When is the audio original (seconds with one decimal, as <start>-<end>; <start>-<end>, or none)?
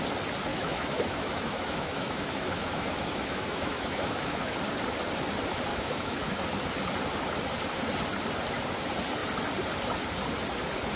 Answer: 0.0-0.5; 4.5-5.7; 6.4-11.0